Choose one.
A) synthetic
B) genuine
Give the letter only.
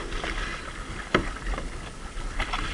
B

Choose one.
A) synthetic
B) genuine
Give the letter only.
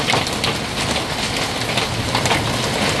B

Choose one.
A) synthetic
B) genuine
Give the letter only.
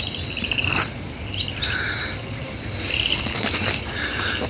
B